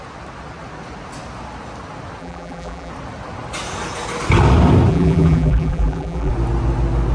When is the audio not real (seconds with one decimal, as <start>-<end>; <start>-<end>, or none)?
2.2-2.9; 4.9-6.3